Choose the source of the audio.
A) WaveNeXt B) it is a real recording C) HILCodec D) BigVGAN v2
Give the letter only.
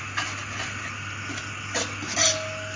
B